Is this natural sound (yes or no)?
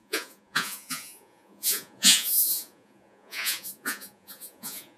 no